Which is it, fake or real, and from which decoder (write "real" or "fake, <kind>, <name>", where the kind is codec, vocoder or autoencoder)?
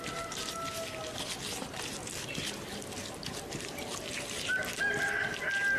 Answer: real